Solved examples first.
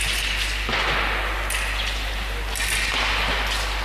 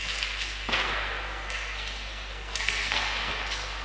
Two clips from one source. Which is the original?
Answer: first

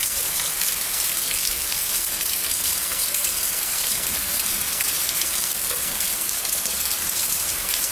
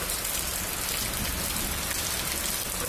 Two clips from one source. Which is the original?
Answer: second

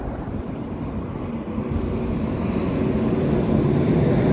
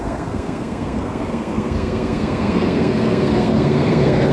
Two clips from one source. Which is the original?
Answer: first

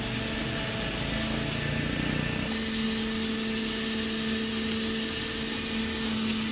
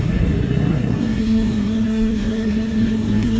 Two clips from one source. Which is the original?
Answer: first